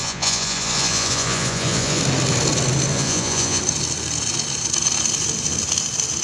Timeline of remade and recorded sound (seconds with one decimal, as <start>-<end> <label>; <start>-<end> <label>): 0.0-2.0 remade; 2.0-2.9 recorded; 2.9-3.6 remade; 3.6-6.2 recorded